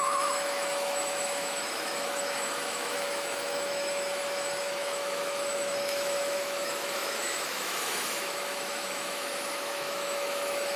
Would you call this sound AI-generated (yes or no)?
yes